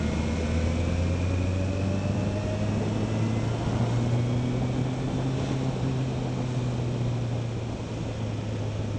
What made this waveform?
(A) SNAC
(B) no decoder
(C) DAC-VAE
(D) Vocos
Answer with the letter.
B